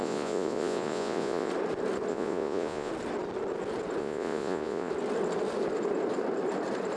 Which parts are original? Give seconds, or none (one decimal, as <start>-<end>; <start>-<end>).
1.5-2.1; 2.9-4.0; 4.9-7.0